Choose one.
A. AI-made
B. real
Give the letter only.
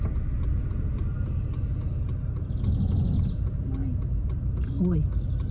B